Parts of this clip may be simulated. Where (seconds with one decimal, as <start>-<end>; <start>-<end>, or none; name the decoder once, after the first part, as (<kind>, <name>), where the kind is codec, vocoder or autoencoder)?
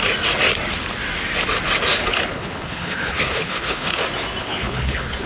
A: 1.9-4.0 (codec, HILCodec); 4.4-5.3